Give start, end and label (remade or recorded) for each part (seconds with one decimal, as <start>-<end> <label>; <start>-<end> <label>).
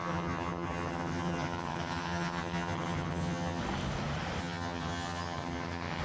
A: 0.0-3.6 remade; 3.6-4.4 recorded; 4.4-6.0 remade